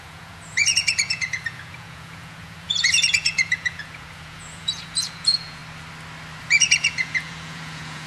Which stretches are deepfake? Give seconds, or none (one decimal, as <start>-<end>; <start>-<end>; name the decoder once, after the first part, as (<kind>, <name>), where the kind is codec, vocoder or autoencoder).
0.0-5.6 (vocoder, Vocos); 6.4-8.1